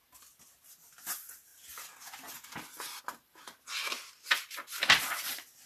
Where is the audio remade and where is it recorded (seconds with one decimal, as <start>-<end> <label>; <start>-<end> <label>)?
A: 0.0-5.7 recorded